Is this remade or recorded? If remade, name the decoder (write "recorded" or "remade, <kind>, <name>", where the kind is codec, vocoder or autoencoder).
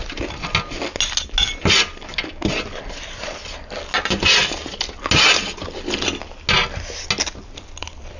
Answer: recorded